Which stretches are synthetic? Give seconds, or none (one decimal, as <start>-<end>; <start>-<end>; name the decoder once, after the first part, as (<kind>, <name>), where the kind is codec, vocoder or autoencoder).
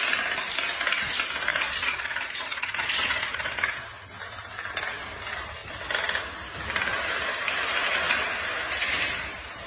1.5-3.8 (vocoder, Vocos)